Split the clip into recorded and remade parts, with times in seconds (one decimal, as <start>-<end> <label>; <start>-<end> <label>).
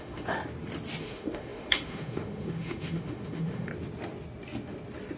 0.0-0.4 remade; 0.4-1.0 recorded; 1.0-3.7 remade; 3.7-5.2 recorded